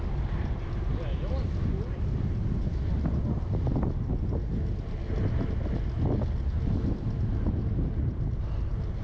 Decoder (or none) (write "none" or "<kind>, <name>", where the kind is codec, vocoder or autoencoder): none